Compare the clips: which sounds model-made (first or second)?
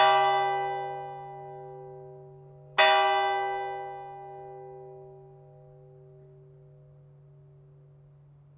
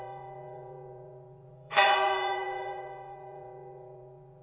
second